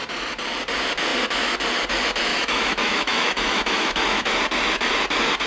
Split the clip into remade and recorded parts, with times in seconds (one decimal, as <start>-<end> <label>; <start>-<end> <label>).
0.0-2.3 recorded; 2.3-4.4 remade; 4.4-5.5 recorded